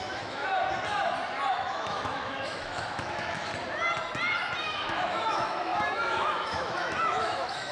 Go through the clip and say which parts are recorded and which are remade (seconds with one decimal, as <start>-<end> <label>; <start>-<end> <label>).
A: 0.0-0.4 remade; 0.4-1.5 recorded; 1.5-3.5 remade; 3.5-4.6 recorded; 4.6-7.7 remade